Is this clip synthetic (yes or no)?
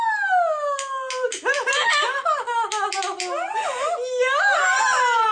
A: no